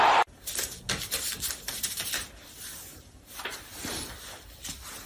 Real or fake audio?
real